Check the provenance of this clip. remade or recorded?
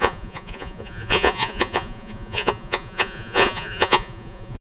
remade